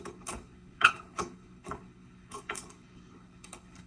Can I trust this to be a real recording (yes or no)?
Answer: no